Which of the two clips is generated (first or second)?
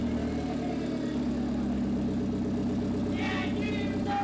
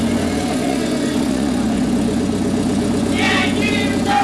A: second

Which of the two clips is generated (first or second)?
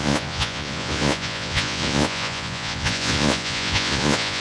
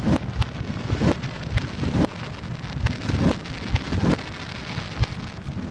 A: first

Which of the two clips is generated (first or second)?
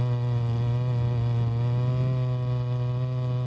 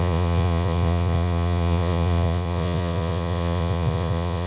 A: second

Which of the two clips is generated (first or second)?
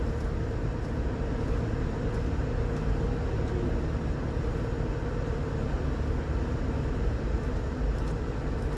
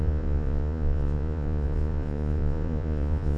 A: second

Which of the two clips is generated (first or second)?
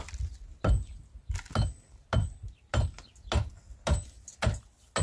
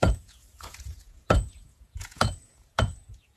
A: second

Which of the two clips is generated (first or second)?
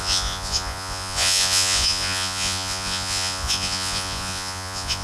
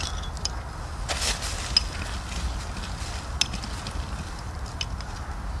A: first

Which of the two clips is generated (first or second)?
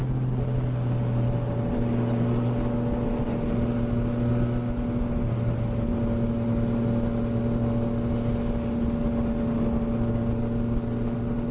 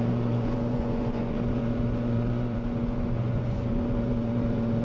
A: second